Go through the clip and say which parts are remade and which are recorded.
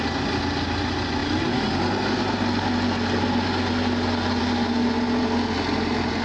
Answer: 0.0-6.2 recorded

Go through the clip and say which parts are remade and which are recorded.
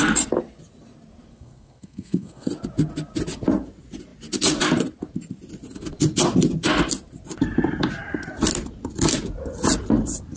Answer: 0.0-1.3 recorded; 1.3-2.5 remade; 2.5-10.4 recorded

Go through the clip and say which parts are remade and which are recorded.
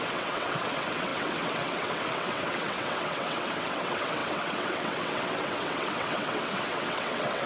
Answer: 0.0-7.5 remade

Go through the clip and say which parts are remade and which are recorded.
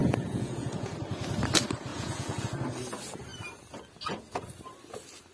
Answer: 0.0-0.9 remade; 0.9-1.9 recorded; 1.9-2.4 remade; 2.4-5.3 recorded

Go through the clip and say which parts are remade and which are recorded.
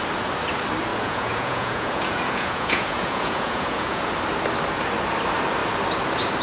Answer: 0.0-0.9 recorded; 0.9-4.1 remade; 4.1-6.4 recorded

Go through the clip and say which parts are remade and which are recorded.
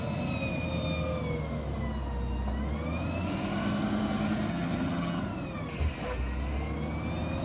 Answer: 0.0-4.5 recorded; 4.5-5.2 remade; 5.2-7.4 recorded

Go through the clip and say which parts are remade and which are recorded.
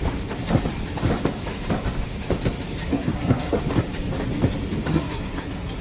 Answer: 0.0-2.8 recorded; 2.8-3.6 remade; 3.6-4.9 recorded; 4.9-5.8 remade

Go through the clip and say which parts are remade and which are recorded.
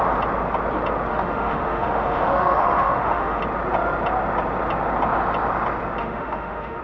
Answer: 0.0-1.1 recorded; 1.1-3.4 remade; 3.4-6.0 recorded; 6.0-6.8 remade